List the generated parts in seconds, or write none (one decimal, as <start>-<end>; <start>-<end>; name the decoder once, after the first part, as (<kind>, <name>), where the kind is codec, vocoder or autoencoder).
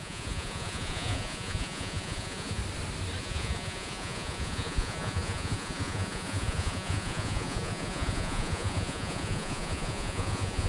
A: 0.0-2.6 (vocoder, Vocos); 3.2-10.7